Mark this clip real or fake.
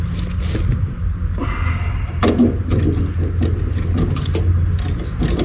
real